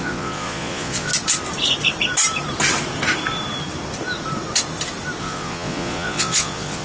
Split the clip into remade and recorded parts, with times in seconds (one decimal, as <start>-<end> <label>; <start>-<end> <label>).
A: 0.0-1.1 remade; 1.1-5.2 recorded; 5.2-6.8 remade